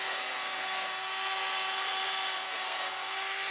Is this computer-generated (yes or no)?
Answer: yes